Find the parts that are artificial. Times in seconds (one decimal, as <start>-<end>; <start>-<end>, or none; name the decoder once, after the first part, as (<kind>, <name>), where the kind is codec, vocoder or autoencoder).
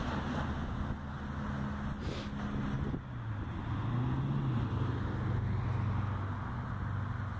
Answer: none